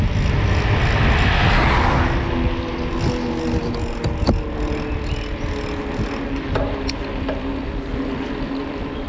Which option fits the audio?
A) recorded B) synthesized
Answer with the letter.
A